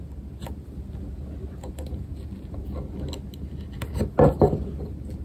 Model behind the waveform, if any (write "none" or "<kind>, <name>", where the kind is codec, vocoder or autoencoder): none